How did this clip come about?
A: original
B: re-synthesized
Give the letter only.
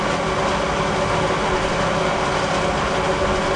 A